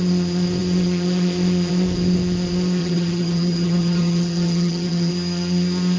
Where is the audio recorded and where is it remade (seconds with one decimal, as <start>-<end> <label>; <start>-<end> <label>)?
0.0-2.8 recorded; 2.8-5.1 remade; 5.1-6.0 recorded